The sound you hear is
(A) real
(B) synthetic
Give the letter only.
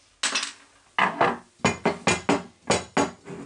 A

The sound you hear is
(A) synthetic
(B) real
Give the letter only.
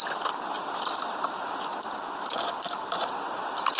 B